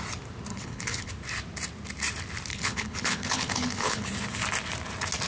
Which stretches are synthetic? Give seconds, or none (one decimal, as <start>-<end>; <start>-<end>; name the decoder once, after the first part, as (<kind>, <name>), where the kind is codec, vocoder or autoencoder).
0.5-1.1 (codec, HILCodec); 2.5-4.1